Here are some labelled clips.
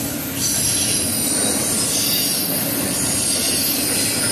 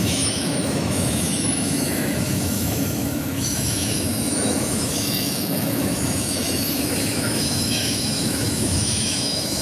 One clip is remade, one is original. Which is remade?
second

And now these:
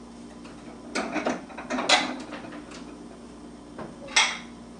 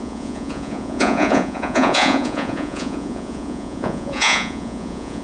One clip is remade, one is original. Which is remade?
second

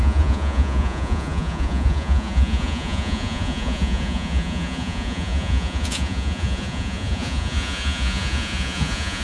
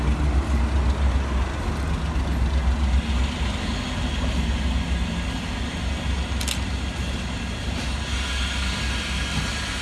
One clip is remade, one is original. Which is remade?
first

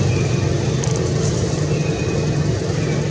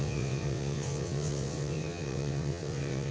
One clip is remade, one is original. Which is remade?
second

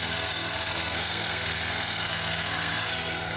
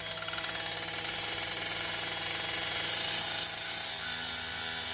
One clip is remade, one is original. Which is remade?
first